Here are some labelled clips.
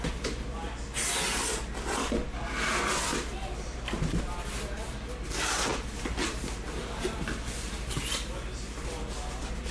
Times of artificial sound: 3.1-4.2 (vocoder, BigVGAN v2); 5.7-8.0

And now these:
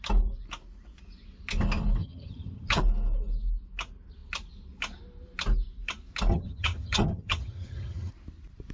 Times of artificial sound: 2.0-2.8 (vocoder, HiFi-GAN); 6.3-8.1

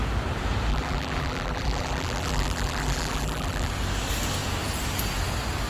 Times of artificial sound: 0.7-3.7 (vocoder, BigVGAN v2)